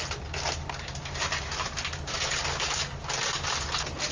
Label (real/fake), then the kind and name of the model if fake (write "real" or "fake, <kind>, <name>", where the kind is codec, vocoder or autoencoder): real